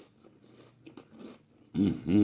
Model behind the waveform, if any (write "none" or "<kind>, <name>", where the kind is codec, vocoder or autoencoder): none